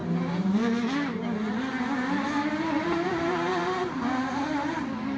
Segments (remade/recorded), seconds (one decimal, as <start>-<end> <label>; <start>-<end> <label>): 0.0-1.2 remade; 1.2-1.7 recorded; 1.7-4.8 remade; 4.8-5.2 recorded